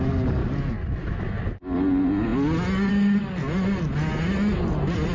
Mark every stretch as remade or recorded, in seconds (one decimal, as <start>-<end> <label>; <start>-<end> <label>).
0.0-5.1 recorded